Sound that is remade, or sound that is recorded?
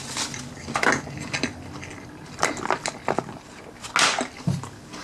recorded